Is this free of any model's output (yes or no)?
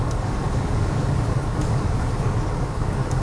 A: no